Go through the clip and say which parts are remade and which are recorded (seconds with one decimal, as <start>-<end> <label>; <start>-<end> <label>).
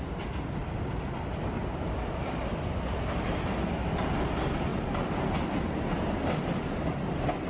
0.0-7.5 recorded